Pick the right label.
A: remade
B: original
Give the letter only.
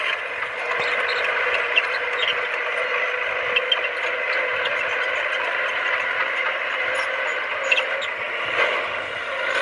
B